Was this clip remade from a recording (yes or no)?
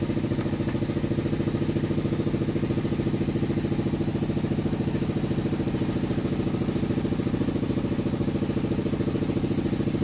no